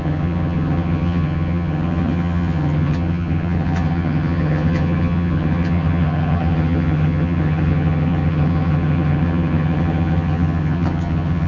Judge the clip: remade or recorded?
remade